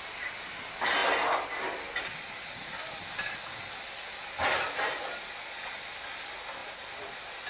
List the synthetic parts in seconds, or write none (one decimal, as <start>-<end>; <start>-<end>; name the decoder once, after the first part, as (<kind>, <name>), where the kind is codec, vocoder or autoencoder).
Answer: none